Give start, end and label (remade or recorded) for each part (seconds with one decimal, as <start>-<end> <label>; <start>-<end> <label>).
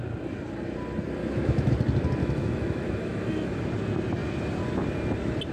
0.0-1.2 recorded; 1.2-1.7 remade; 1.7-2.2 recorded; 2.2-3.6 remade; 3.6-5.5 recorded